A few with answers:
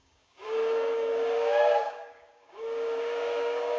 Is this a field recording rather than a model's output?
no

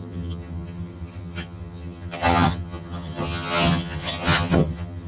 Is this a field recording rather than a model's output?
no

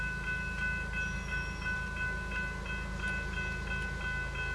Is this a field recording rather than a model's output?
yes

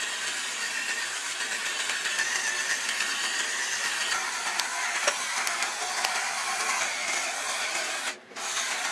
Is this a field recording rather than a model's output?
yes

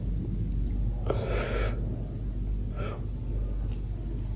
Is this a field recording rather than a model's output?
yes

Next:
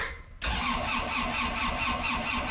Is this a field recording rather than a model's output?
yes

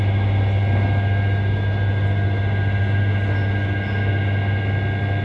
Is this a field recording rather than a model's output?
yes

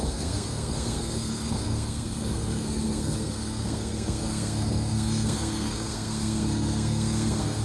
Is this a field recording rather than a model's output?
no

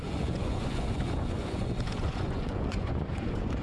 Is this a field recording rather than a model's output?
no